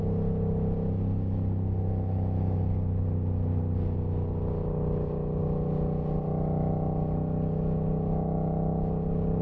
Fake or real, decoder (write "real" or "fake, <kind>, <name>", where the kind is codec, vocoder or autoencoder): real